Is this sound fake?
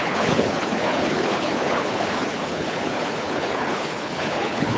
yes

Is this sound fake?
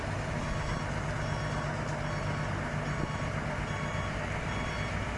no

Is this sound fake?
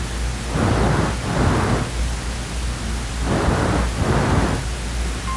no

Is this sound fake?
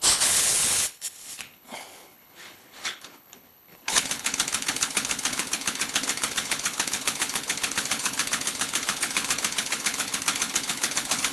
yes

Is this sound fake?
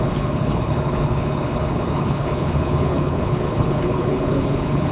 yes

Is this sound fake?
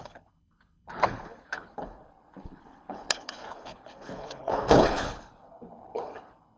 yes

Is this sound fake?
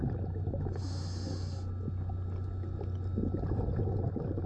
no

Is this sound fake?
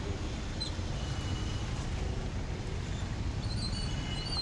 no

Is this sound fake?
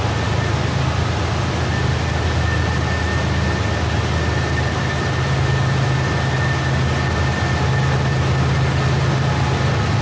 no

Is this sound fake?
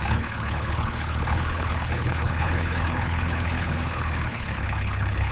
yes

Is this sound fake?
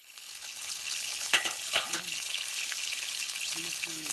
yes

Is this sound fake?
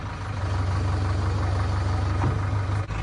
no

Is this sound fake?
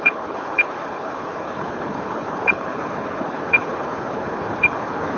yes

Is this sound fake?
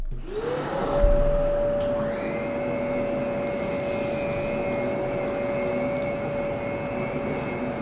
no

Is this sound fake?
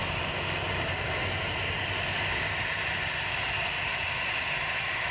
no